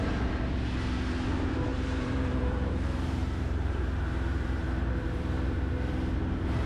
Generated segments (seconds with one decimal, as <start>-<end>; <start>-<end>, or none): 1.7-5.7